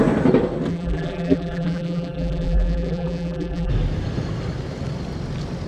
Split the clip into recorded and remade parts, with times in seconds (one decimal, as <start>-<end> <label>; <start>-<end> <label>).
0.0-0.7 recorded; 0.7-3.7 remade; 3.7-5.7 recorded